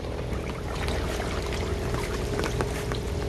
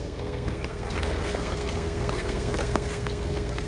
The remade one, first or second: second